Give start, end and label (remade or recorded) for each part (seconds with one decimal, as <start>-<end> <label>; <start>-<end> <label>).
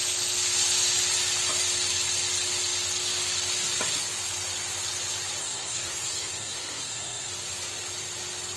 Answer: 0.0-5.4 recorded; 5.4-7.3 remade; 7.3-8.6 recorded